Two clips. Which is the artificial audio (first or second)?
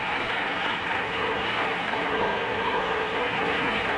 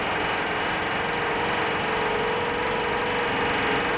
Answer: first